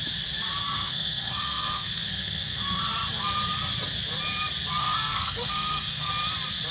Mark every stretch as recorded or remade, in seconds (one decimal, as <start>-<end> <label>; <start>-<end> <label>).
0.0-0.6 recorded; 0.6-2.8 remade; 2.8-4.8 recorded; 4.8-6.1 remade; 6.1-6.7 recorded